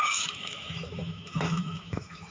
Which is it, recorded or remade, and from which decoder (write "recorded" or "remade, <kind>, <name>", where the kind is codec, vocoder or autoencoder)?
remade, autoencoder, DAC-VAE